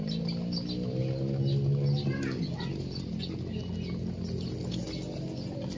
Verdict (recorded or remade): recorded